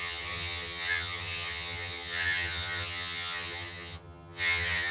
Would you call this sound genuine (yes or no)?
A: no